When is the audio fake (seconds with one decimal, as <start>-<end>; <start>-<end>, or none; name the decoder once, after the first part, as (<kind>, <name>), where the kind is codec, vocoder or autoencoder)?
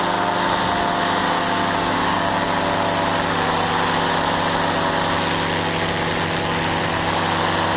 1.2-2.3 (codec, DAC)